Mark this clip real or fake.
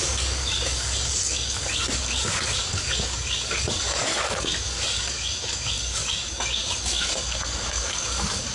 fake